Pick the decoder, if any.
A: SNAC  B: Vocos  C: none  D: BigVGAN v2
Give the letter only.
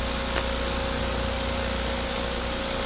C